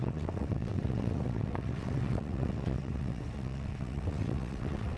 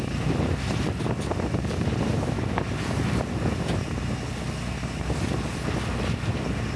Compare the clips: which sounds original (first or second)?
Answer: second